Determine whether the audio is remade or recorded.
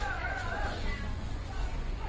remade